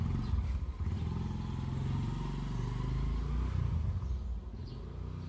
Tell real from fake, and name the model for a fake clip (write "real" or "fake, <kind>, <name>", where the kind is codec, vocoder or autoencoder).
real